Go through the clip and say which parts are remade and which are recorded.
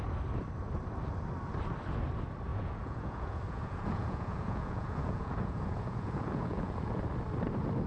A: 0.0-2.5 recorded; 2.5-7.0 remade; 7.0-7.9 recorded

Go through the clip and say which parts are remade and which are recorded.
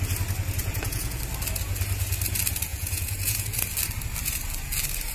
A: 0.0-0.6 recorded; 0.6-1.2 remade; 1.2-2.7 recorded; 2.7-3.6 remade; 3.6-5.1 recorded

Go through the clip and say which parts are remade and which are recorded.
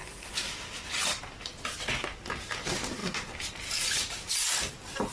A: 0.0-5.1 recorded